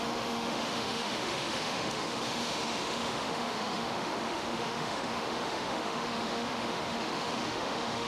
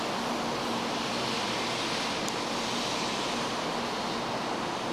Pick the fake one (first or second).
first